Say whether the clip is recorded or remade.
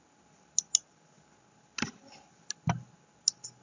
recorded